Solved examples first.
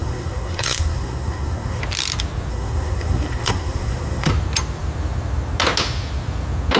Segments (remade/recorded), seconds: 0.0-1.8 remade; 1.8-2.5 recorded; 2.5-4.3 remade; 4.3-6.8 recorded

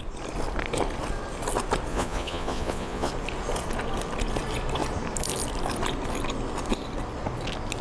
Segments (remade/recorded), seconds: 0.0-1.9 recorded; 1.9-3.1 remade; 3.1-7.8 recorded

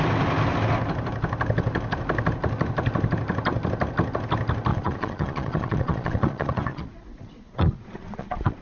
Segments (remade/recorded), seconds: 0.0-4.7 recorded; 4.7-8.6 remade

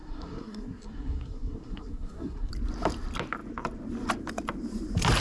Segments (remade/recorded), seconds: 0.0-2.5 remade; 2.5-5.2 recorded

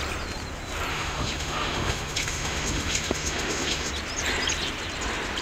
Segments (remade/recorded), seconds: 0.0-0.9 recorded; 0.9-3.9 remade; 3.9-5.4 recorded